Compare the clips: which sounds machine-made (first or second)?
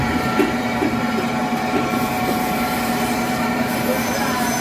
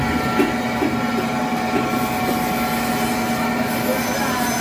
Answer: first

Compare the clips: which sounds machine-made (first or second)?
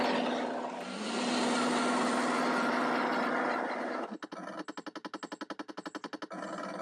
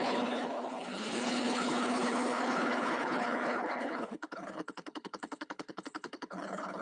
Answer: second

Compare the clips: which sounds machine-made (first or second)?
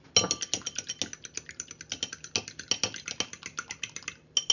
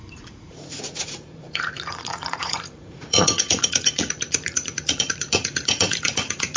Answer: second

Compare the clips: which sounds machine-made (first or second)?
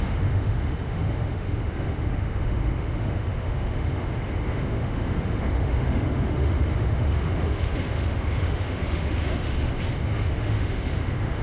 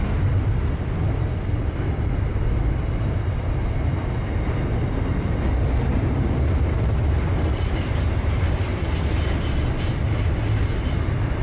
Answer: first